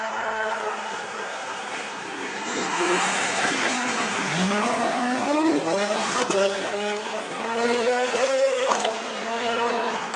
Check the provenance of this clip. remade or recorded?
remade